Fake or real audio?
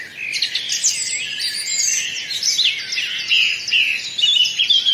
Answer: real